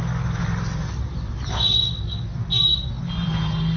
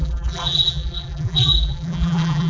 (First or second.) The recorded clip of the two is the first